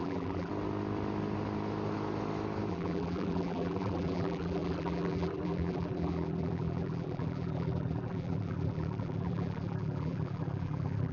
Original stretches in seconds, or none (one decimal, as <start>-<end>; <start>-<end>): 0.5-2.7